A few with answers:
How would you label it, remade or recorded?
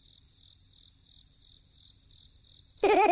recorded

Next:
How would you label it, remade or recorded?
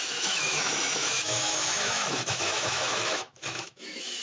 remade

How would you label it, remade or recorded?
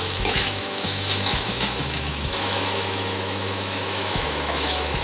remade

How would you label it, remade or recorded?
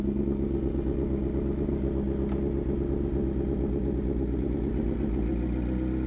recorded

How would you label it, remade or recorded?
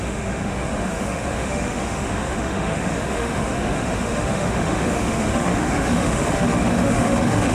remade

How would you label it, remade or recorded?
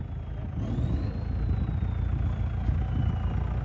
recorded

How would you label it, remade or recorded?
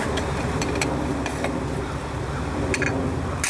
recorded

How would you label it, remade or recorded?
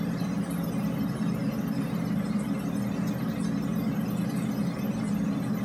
recorded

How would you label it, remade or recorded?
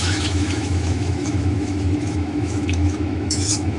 remade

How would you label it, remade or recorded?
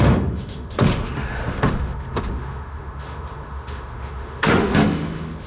remade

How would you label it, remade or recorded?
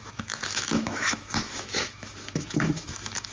remade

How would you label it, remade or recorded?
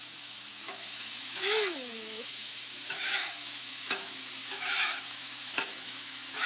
remade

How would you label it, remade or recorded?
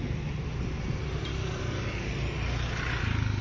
recorded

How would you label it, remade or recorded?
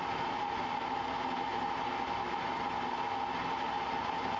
recorded